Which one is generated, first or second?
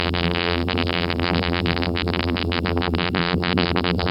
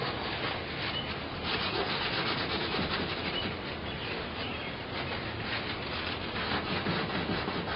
first